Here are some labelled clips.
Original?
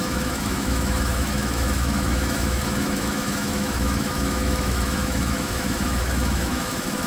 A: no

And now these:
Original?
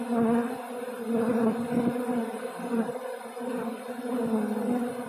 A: yes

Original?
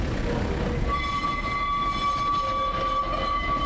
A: yes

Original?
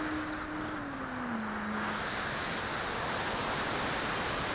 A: yes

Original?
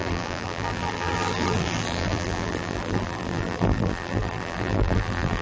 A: no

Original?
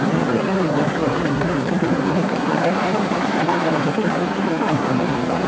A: no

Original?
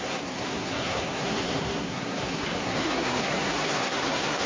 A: no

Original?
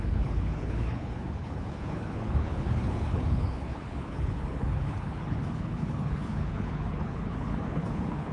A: no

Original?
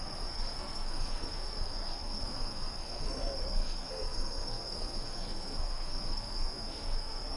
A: no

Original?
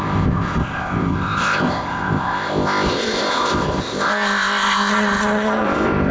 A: no